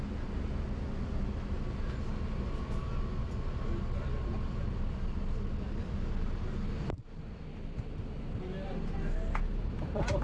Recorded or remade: recorded